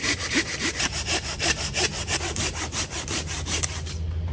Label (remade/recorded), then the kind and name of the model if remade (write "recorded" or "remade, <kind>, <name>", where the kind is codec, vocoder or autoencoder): remade, vocoder, BigVGAN v2